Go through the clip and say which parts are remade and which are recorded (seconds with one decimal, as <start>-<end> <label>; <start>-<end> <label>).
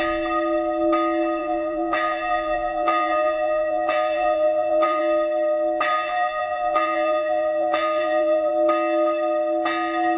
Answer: 0.0-1.4 recorded; 1.4-5.0 remade; 5.0-5.9 recorded; 5.9-8.5 remade; 8.5-10.2 recorded